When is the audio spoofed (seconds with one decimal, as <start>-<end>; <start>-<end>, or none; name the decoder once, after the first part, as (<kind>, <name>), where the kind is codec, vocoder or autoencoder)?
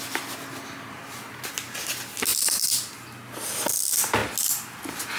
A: none